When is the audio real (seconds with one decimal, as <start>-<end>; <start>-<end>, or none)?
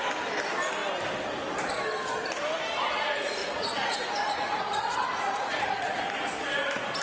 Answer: 0.0-3.4; 6.0-7.0